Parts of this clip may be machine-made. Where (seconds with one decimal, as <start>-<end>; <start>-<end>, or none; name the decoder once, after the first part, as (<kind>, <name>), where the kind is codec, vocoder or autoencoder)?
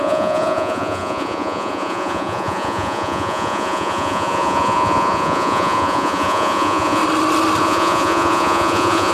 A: 0.0-7.0 (vocoder, Vocos); 7.6-9.1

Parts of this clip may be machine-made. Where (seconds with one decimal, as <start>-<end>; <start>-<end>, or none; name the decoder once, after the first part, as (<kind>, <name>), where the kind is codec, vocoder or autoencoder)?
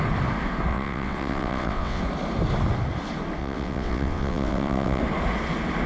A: 0.7-2.0 (vocoder, WaveNeXt); 3.4-5.0